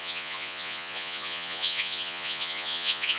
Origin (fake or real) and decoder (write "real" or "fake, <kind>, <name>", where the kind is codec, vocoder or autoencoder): fake, vocoder, Vocos